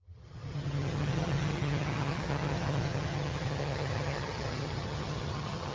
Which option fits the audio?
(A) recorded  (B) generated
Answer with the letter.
B